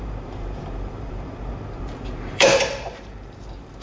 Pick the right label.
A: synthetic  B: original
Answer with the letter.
A